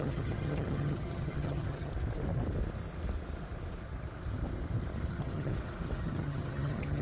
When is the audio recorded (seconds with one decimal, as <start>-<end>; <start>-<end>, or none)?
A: 1.9-5.1; 5.5-6.0

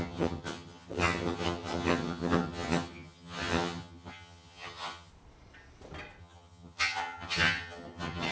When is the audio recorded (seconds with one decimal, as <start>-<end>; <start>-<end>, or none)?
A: 5.1-6.2

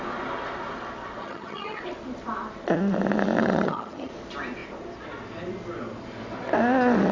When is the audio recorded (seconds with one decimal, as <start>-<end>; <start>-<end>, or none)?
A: 0.0-1.2; 1.8-3.4; 4.1-7.1

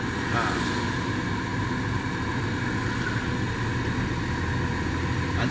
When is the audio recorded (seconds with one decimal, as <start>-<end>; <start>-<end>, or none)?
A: 0.0-5.5

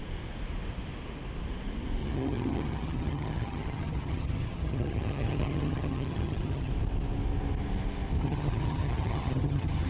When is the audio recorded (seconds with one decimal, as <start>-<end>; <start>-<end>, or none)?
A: 0.0-2.0; 6.7-8.2

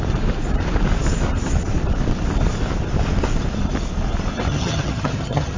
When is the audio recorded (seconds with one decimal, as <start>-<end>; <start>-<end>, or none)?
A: 0.0-4.5